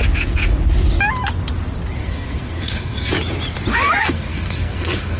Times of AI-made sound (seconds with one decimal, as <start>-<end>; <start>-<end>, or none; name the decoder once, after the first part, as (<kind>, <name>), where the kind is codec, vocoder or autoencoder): 2.0-3.1 (codec, SNAC); 3.8-5.2